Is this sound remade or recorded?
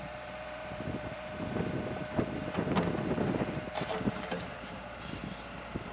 remade